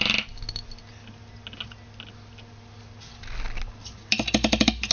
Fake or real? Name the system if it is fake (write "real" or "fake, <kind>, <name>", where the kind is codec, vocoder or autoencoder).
real